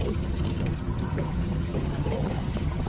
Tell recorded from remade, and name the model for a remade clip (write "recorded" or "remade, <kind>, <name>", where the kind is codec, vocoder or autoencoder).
remade, vocoder, HiFi-GAN